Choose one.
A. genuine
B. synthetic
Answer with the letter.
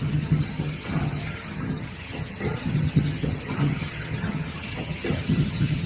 B